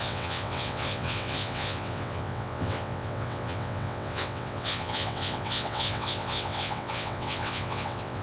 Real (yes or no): no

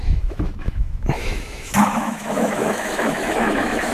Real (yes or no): no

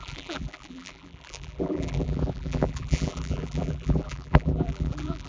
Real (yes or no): no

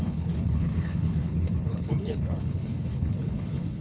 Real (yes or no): no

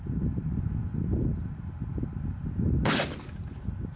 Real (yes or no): yes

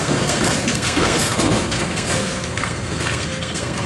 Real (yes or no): no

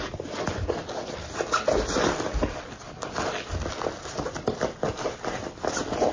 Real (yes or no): yes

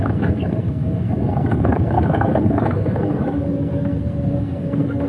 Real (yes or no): no